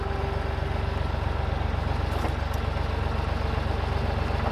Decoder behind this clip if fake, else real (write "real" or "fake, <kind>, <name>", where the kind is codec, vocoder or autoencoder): real